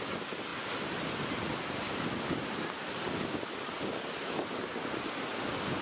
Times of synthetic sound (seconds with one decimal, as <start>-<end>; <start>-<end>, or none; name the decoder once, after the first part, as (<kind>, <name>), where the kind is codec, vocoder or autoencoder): none